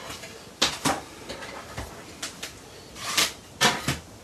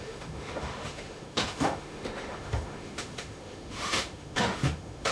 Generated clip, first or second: second